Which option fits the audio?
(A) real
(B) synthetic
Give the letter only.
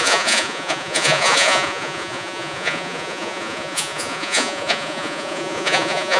B